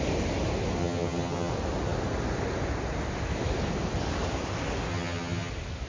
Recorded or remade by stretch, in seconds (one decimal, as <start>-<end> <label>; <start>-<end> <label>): 0.0-0.8 recorded; 0.8-1.5 remade; 1.5-4.9 recorded; 4.9-5.5 remade; 5.5-5.9 recorded